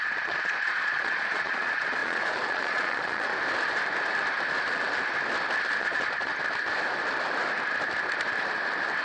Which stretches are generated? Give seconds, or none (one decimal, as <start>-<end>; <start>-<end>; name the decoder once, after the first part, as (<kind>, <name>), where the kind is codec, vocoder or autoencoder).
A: 0.0-3.3 (vocoder, Vocos); 5.8-6.3